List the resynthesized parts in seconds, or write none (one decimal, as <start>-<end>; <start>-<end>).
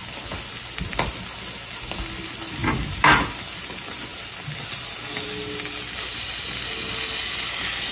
none